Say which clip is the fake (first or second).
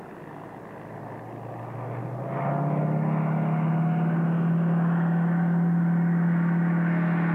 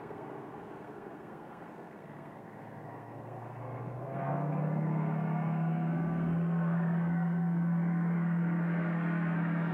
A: second